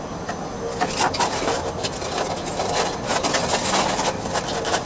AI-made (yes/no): no